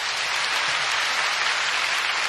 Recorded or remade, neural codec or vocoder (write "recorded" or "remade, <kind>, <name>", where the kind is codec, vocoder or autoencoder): recorded